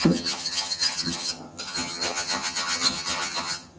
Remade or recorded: remade